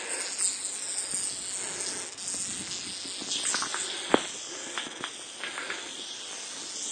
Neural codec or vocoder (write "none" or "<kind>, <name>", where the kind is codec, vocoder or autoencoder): none